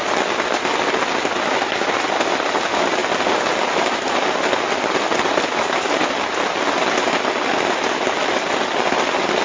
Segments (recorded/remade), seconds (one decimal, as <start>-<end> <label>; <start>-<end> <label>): 0.0-9.4 recorded